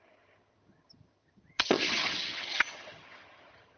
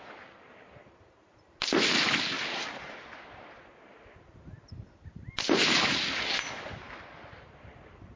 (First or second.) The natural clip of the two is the second